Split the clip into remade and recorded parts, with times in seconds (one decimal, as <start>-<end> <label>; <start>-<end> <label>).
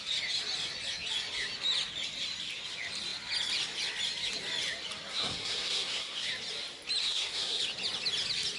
0.0-5.1 recorded; 5.1-6.3 remade; 6.3-7.0 recorded; 7.0-7.6 remade; 7.6-8.6 recorded